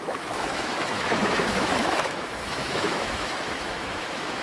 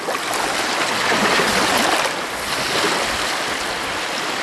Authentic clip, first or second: second